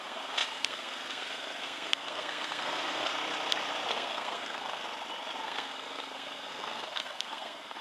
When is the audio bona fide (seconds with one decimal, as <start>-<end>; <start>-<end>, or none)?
3.1-3.9; 4.8-5.4